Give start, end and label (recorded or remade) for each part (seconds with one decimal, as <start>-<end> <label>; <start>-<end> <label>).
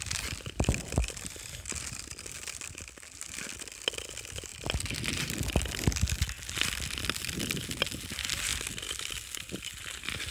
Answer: 0.0-10.3 recorded